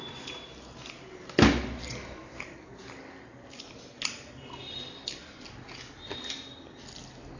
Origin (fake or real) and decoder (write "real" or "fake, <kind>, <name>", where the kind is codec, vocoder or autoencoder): real